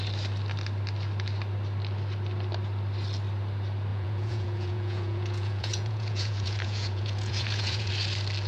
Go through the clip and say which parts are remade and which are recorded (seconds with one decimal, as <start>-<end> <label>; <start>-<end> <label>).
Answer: 0.0-3.9 recorded; 3.9-7.9 remade; 7.9-8.5 recorded